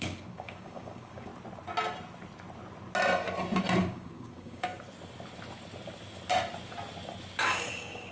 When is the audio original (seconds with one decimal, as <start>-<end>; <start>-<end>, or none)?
1.3-3.8; 4.7-7.4